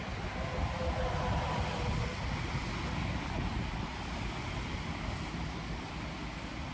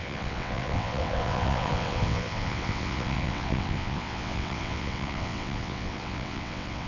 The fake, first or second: second